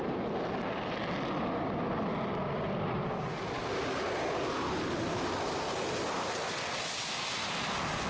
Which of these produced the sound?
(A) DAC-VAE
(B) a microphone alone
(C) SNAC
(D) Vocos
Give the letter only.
B